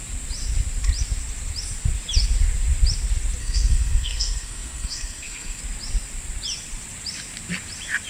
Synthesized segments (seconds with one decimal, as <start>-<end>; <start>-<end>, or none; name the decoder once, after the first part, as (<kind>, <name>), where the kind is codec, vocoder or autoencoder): 3.4-5.6 (codec, SNAC)